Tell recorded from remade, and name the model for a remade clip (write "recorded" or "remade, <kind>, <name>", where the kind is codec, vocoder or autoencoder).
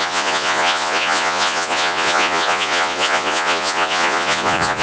remade, vocoder, Vocos